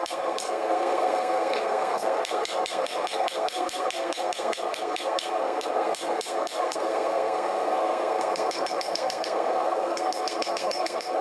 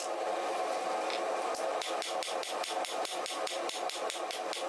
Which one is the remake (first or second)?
first